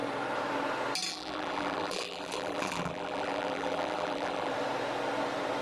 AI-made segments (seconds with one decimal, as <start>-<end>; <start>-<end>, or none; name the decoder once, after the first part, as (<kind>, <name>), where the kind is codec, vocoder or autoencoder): 1.1-4.5 (vocoder, BigVGAN v2)